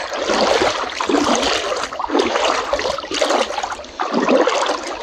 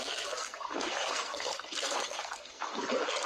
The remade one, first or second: second